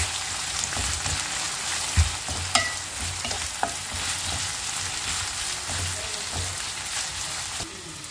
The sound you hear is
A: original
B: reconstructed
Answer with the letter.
A